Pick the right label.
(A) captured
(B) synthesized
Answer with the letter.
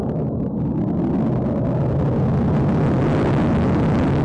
A